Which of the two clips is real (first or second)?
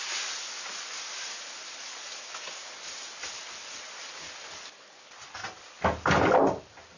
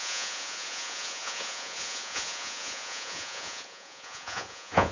first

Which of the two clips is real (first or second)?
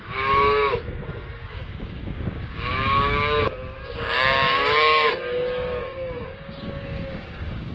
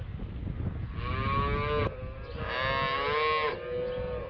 second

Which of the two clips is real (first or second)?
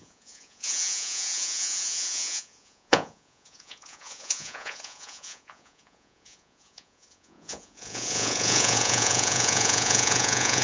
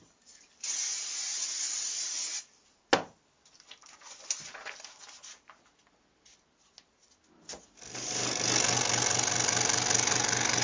second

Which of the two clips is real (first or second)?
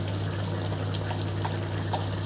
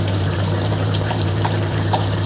first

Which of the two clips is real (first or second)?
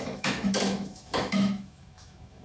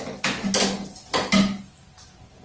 second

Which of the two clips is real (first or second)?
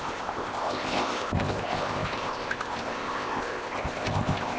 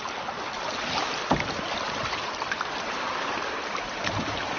second